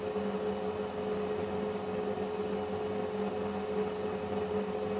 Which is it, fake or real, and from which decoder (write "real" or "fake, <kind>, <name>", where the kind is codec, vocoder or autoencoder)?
real